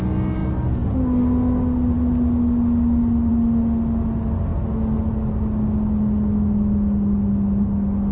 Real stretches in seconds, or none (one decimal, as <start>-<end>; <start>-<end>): 0.0-8.1